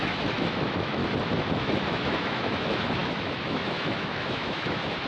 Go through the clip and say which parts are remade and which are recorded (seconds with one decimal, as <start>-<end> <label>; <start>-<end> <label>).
0.0-1.0 remade; 1.0-1.6 recorded; 1.6-5.1 remade